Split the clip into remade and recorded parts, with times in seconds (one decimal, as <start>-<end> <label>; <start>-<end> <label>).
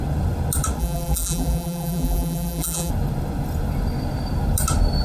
0.0-0.8 recorded; 0.8-2.9 remade; 2.9-5.0 recorded